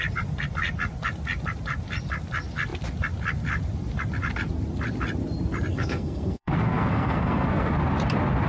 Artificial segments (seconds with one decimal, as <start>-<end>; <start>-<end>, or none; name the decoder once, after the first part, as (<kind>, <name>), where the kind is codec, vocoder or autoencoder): 5.7-7.7 (codec, SNAC)